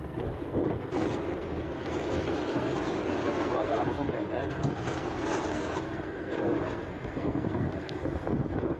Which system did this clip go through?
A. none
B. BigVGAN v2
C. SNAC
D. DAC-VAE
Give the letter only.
C